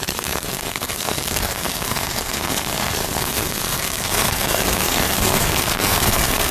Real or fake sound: fake